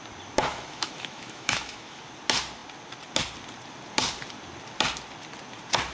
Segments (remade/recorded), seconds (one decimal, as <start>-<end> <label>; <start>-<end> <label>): 0.0-0.5 recorded; 0.5-2.0 remade; 2.0-5.9 recorded